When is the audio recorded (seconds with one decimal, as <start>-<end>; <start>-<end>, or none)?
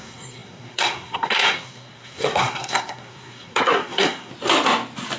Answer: 4.3-5.2